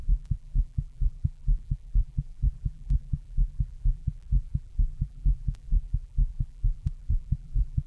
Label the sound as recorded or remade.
remade